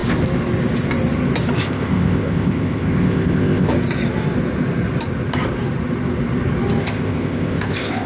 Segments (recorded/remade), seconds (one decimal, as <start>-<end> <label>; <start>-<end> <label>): 0.0-1.6 recorded; 1.6-3.7 remade; 3.7-6.8 recorded; 6.8-8.1 remade